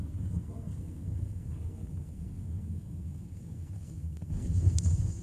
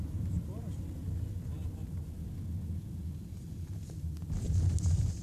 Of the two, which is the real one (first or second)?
second